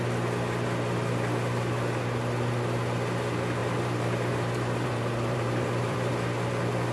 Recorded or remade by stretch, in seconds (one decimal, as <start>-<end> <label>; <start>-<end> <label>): 0.0-3.6 recorded; 3.6-6.1 remade; 6.1-6.9 recorded